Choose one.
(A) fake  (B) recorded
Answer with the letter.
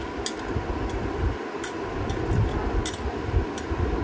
B